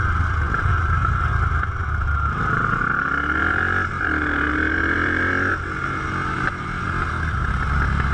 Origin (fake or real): real